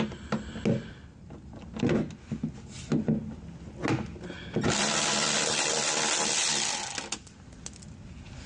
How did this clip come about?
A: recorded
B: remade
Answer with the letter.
A